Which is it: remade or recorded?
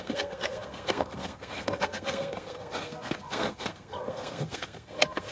remade